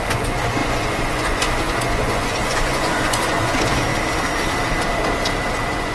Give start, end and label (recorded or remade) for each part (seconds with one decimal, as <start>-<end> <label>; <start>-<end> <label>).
0.0-3.9 remade; 3.9-5.5 recorded; 5.5-5.9 remade